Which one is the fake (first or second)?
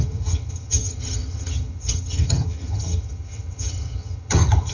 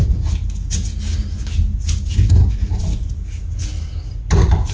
first